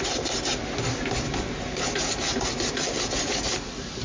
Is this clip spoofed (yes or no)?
no